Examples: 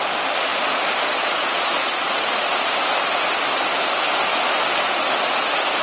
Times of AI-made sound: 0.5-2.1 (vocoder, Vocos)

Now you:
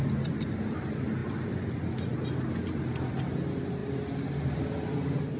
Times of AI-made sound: none

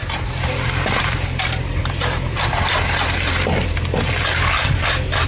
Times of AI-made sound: 0.0-2.6 (vocoder, BigVGAN v2)

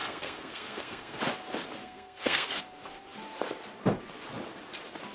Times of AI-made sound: 0.0-1.2 (codec, SNAC); 1.8-2.6

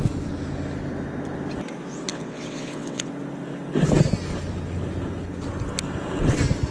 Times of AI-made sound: 2.1-3.1 (vocoder, WaveNeXt)

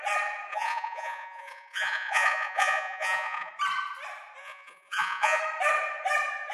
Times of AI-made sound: 0.5-3.5 (vocoder, Vocos); 4.4-5.4